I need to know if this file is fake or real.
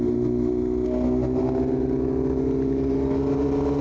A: real